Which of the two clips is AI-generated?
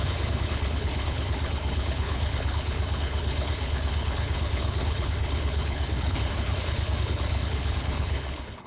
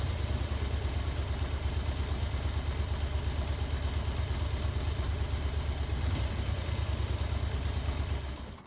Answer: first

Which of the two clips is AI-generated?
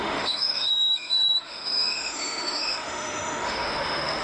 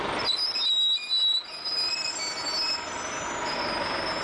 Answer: first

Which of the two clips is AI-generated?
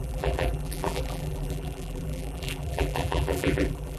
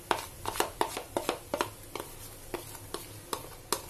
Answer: first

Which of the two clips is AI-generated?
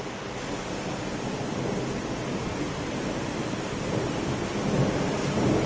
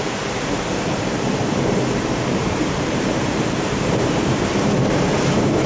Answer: second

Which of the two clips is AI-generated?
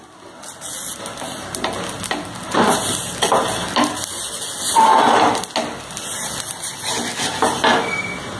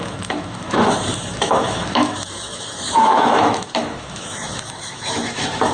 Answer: second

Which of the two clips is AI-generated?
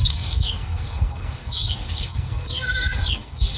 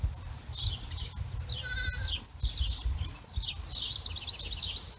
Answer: first